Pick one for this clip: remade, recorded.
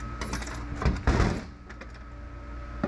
recorded